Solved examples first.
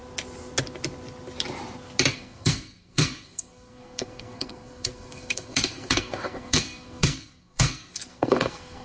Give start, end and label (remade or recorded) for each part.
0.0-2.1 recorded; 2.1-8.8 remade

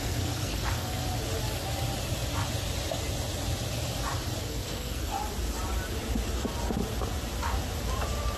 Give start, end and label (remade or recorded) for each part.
0.0-1.0 remade; 1.0-4.4 recorded; 4.4-5.1 remade; 5.1-8.4 recorded

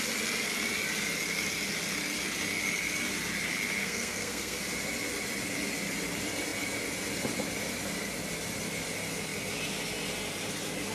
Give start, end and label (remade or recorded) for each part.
0.0-3.8 recorded; 3.8-4.6 remade; 4.6-10.9 recorded

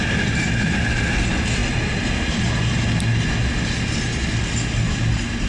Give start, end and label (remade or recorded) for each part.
0.0-5.5 recorded

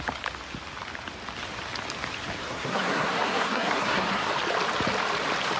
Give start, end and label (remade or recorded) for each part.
0.0-2.4 recorded; 2.4-4.3 remade; 4.3-5.6 recorded

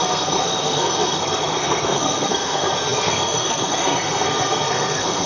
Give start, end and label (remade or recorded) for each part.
0.0-5.3 remade

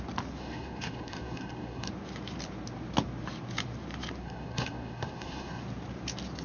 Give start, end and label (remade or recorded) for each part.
0.0-0.4 recorded; 0.4-1.9 remade; 1.9-4.2 recorded; 4.2-5.6 remade; 5.6-6.4 recorded